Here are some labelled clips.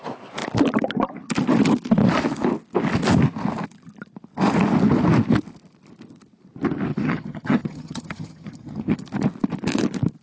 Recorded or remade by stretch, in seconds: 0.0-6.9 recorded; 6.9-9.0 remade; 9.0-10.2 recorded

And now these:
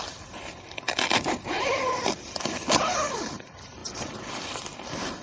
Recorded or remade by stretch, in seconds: 0.0-5.2 recorded

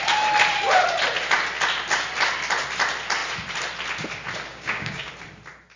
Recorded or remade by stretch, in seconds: 0.0-4.5 recorded; 4.5-5.1 remade; 5.1-5.8 recorded